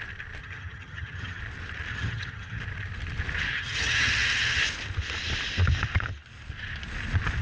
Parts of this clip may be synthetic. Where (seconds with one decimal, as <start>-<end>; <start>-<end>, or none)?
0.4-1.4; 1.9-2.6; 3.5-4.6